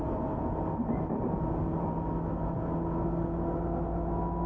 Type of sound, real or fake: real